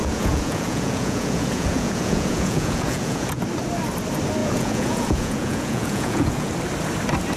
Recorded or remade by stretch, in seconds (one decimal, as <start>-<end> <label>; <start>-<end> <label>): 0.0-3.4 remade; 3.4-4.4 recorded; 4.4-6.5 remade; 6.5-7.4 recorded